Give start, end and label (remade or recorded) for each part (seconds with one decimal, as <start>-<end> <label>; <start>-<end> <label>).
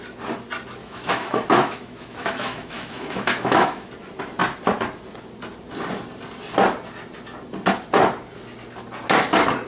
0.0-0.8 recorded; 0.8-3.9 remade; 3.9-9.7 recorded